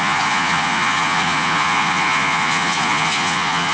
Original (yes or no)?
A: no